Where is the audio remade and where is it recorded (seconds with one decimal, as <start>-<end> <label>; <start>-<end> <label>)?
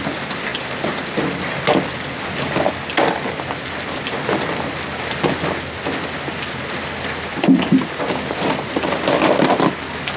0.0-10.2 recorded